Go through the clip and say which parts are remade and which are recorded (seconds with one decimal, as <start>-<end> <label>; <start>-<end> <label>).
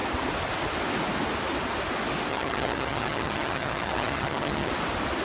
0.0-2.3 recorded; 2.3-4.7 remade; 4.7-5.2 recorded